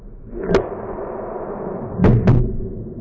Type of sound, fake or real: real